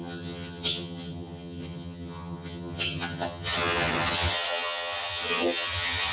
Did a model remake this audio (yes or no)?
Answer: yes